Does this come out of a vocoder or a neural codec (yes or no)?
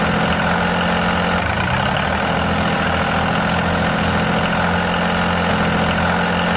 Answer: no